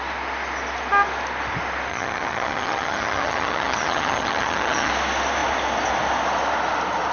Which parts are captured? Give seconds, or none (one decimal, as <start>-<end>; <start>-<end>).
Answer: 0.0-1.9; 4.9-7.1